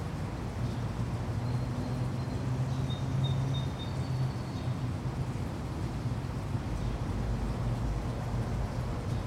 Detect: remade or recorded recorded